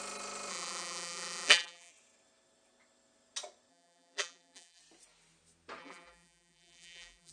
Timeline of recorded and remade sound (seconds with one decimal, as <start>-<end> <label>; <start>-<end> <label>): 0.0-0.5 recorded; 0.5-1.9 remade; 1.9-3.7 recorded; 3.7-4.8 remade; 4.8-5.8 recorded; 5.8-7.3 remade